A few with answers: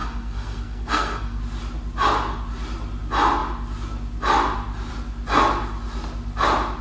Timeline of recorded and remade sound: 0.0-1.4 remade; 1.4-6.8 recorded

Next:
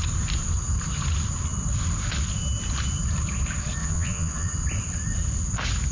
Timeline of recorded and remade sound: 0.0-3.8 recorded; 3.8-4.5 remade; 4.5-5.9 recorded